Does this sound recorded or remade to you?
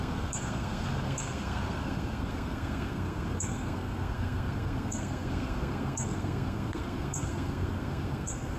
remade